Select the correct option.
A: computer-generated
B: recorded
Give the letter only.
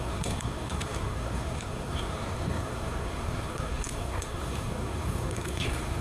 A